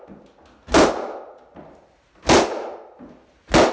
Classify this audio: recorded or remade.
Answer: recorded